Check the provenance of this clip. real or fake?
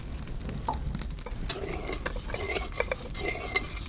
real